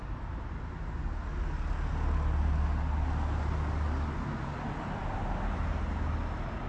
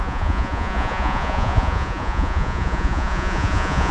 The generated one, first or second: second